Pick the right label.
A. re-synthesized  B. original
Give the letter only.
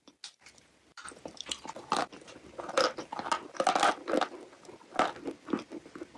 B